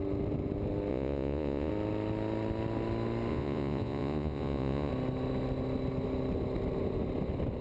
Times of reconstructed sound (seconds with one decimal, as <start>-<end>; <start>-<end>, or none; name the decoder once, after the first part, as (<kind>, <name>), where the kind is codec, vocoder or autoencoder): 0.9-1.7 (vocoder, Vocos); 3.3-4.9